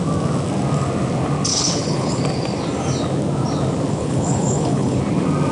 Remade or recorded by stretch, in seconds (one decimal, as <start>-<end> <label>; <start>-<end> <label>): 0.0-1.5 recorded; 1.5-2.2 remade; 2.2-4.0 recorded; 4.0-5.0 remade; 5.0-5.5 recorded

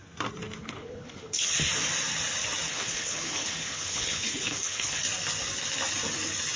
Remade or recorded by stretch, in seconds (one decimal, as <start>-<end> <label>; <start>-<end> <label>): 0.0-0.6 recorded; 0.6-1.7 remade; 1.7-2.7 recorded; 2.7-5.0 remade; 5.0-6.6 recorded

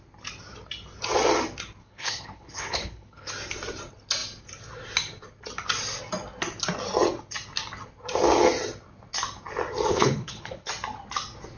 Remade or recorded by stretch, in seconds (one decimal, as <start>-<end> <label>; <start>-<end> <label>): 0.0-1.8 recorded; 1.8-3.3 remade; 3.3-9.9 recorded; 9.9-10.7 remade; 10.7-11.6 recorded

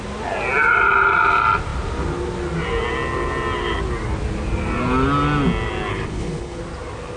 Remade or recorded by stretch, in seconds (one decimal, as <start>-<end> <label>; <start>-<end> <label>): 0.0-5.9 recorded; 5.9-6.6 remade; 6.6-7.2 recorded